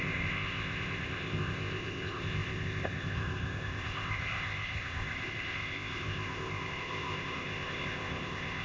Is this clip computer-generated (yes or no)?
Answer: yes